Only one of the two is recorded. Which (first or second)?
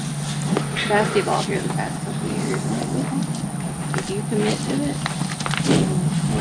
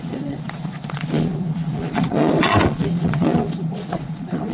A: first